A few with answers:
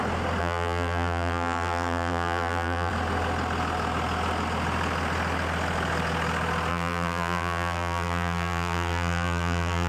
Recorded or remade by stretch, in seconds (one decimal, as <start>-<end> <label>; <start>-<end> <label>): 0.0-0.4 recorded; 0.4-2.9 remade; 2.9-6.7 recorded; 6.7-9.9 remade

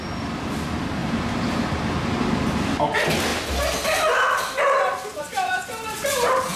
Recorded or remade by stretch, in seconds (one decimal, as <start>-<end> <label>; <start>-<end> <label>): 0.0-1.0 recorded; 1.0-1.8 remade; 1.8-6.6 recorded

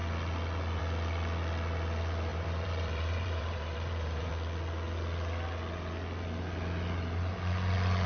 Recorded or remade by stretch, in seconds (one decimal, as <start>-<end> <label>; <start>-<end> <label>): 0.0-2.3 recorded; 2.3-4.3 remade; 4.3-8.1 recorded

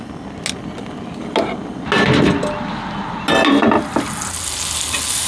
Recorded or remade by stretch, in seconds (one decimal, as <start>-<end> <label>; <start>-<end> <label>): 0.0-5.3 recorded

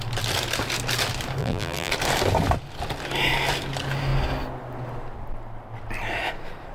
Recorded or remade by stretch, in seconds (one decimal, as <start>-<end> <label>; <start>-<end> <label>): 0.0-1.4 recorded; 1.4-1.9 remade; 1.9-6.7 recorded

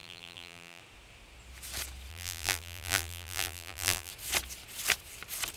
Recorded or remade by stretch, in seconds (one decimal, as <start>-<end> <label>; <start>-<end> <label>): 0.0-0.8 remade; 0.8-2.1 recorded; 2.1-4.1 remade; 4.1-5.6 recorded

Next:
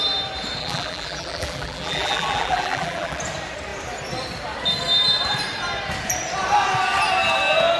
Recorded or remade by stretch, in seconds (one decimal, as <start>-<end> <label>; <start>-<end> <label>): 0.0-0.6 recorded; 0.6-3.2 remade; 3.2-7.8 recorded